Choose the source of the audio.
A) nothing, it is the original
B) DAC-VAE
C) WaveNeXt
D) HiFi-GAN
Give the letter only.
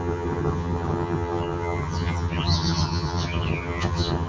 D